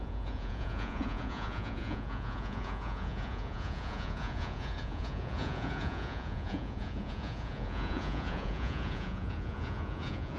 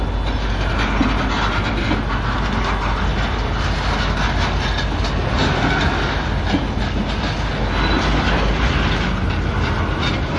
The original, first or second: second